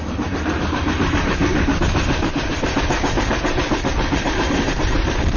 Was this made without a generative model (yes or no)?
no